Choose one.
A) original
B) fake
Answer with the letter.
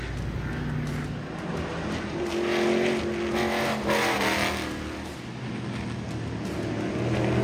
A